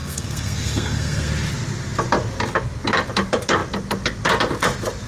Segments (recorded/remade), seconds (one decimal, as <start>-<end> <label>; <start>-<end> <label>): 0.0-1.3 remade; 1.3-5.1 recorded